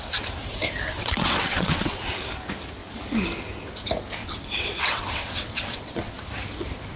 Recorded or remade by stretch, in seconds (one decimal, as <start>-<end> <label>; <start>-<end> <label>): 0.0-0.9 recorded; 0.9-2.1 remade; 2.1-4.2 recorded; 4.2-6.1 remade; 6.1-7.0 recorded